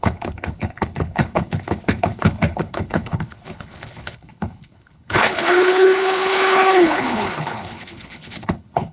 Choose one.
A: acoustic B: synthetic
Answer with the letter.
B